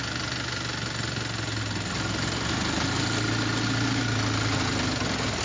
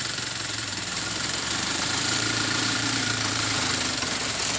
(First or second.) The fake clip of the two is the second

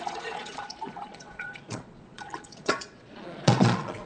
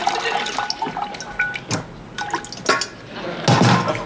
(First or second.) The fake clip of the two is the first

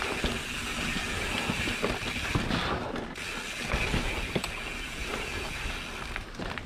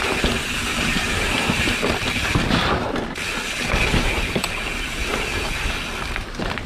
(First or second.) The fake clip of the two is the second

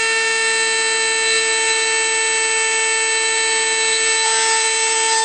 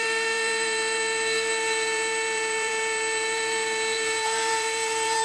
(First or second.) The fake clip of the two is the second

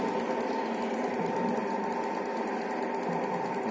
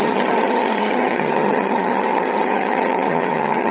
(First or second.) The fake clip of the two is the second